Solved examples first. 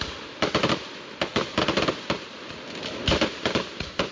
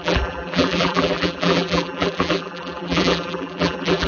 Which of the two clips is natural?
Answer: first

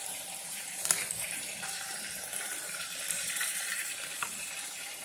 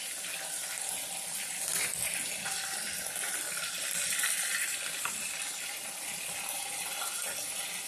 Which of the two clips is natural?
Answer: second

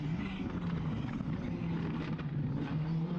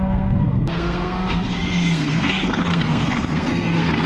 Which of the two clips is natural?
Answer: first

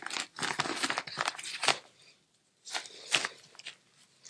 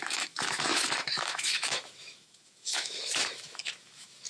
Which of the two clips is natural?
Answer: first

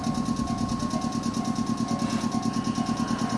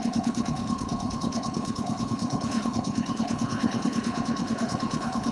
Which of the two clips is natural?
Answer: first